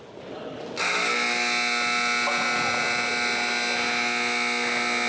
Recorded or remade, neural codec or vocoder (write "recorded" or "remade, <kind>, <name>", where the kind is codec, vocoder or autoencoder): recorded